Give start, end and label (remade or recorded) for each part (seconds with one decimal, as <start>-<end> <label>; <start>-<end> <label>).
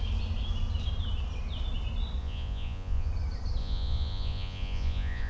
0.0-2.2 recorded; 2.2-3.1 remade; 3.1-3.6 recorded; 3.6-5.3 remade